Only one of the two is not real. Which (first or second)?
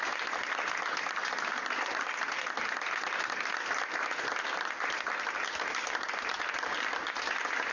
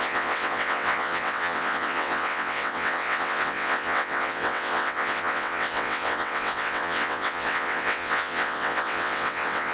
second